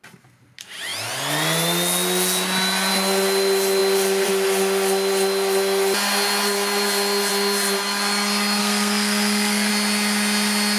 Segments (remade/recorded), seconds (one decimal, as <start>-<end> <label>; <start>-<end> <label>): 0.0-8.6 recorded; 8.6-9.7 remade; 9.7-10.8 recorded